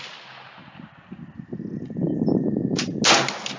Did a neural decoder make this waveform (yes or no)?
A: no